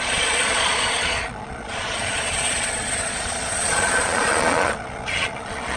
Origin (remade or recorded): remade